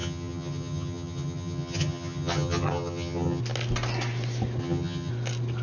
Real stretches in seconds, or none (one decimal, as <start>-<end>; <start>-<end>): 3.4-4.6; 5.1-5.6